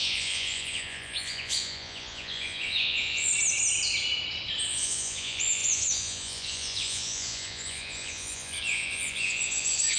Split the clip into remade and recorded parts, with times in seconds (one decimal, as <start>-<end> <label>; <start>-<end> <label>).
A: 0.0-3.3 remade; 3.3-4.7 recorded; 4.7-10.0 remade